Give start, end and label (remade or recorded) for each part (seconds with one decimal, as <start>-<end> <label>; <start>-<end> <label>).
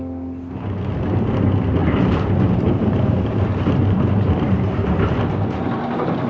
0.0-1.8 recorded; 1.8-4.7 remade; 4.7-6.3 recorded